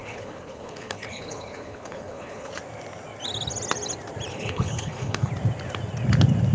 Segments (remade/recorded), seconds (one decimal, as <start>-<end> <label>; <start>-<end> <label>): 0.0-2.5 remade; 2.5-4.3 recorded; 4.3-5.3 remade; 5.3-6.5 recorded